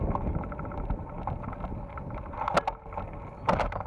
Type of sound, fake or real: real